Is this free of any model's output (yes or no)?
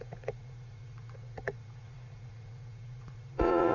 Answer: no